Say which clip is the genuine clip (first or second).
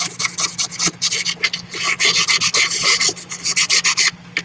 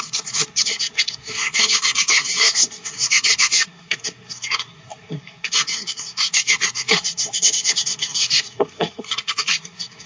first